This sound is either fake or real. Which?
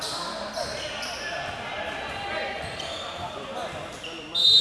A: real